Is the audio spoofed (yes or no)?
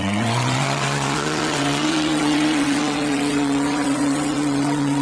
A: yes